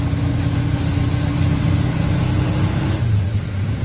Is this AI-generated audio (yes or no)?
no